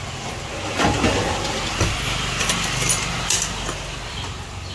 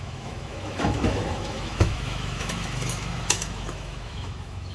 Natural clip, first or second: first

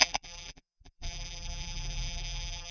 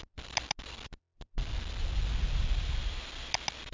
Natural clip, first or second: second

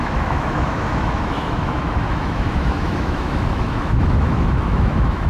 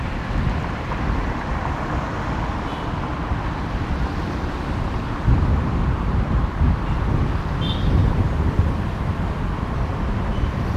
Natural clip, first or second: second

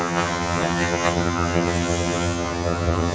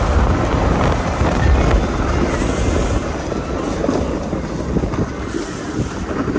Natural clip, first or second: second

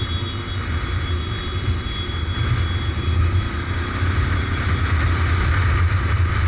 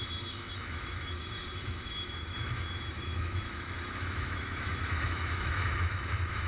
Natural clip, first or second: first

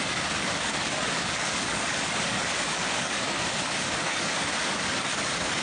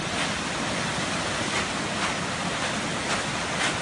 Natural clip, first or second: second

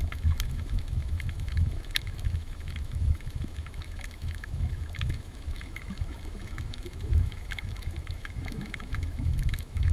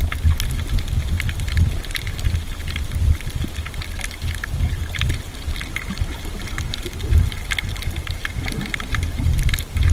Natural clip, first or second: second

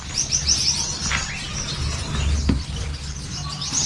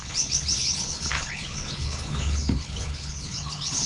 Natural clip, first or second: first